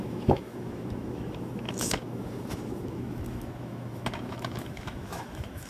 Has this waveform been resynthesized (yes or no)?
yes